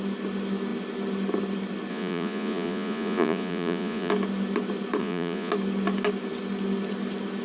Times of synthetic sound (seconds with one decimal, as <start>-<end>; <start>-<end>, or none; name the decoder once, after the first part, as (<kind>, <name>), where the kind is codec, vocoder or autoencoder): 1.9-4.1 (vocoder, Vocos); 5.0-5.5